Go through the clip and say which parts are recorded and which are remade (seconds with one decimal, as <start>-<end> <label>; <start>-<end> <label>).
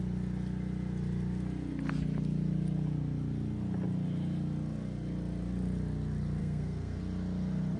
0.0-6.4 recorded; 6.4-7.0 remade; 7.0-7.8 recorded